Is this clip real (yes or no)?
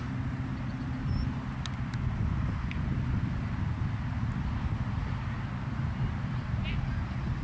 yes